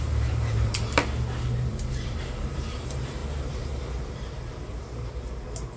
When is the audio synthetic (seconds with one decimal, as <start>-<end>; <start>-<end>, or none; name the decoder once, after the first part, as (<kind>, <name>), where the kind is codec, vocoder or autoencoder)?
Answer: 0.0-0.8 (vocoder, BigVGAN v2); 1.7-5.8